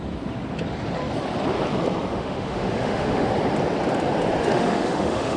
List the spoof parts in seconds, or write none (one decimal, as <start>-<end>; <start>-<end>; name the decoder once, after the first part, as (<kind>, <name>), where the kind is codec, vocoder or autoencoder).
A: 2.1-3.3 (autoencoder, DAC-VAE); 4.4-5.4